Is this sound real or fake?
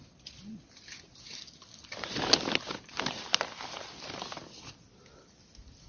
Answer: real